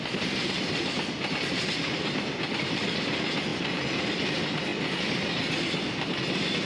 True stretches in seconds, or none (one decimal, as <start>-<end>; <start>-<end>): 0.0-6.7